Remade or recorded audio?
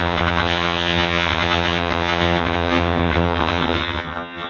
remade